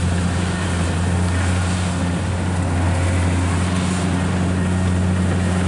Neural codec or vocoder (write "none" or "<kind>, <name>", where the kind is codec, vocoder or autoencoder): none